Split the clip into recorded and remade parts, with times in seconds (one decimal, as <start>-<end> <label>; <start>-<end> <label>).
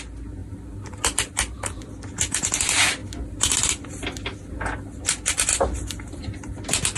0.0-0.4 recorded; 0.4-1.8 remade; 1.8-3.0 recorded; 3.0-6.6 remade; 6.6-7.0 recorded